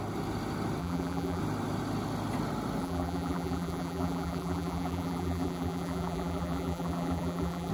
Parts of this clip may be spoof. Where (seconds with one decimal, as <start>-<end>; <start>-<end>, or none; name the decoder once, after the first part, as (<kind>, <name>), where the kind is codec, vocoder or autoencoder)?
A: 0.8-1.4 (vocoder, BigVGAN v2); 2.8-7.7